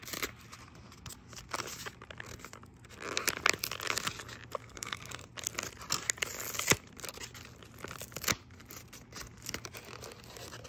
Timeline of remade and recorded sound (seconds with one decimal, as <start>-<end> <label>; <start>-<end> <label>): 0.0-4.6 recorded; 4.6-5.3 remade; 5.3-10.7 recorded